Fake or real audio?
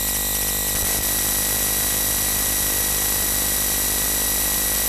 real